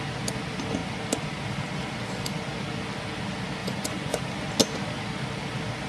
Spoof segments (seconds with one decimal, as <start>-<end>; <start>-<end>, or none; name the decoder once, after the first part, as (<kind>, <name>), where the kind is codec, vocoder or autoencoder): 3.6-4.2 (vocoder, Vocos)